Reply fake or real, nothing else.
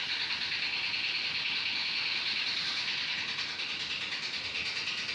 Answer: real